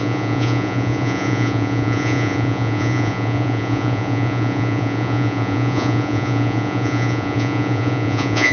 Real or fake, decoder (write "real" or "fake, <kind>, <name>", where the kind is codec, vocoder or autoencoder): fake, vocoder, Vocos